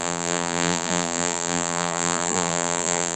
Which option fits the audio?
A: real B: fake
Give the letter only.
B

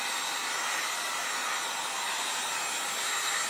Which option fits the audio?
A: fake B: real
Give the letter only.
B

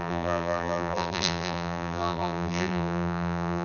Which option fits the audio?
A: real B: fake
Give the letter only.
B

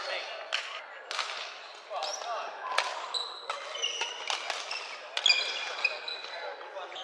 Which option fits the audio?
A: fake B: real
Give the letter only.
B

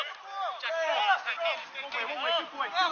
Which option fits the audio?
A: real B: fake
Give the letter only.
A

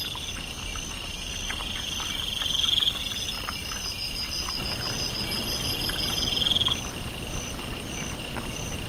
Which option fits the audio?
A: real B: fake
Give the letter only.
A